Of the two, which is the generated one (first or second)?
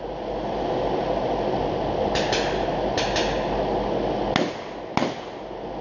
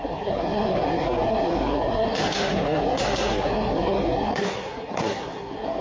second